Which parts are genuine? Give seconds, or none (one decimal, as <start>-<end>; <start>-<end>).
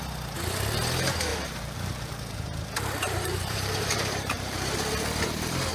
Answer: 0.0-1.3; 4.7-5.7